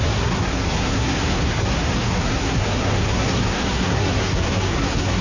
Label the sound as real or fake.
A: fake